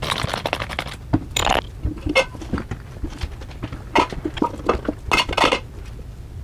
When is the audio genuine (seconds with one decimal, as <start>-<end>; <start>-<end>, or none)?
0.0-6.4